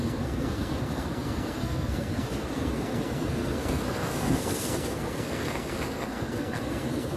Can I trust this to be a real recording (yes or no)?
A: no